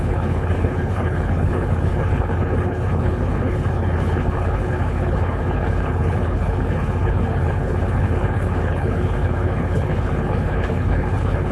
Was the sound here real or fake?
fake